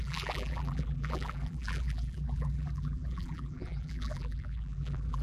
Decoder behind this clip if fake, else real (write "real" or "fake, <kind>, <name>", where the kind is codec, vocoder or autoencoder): fake, vocoder, BigVGAN v2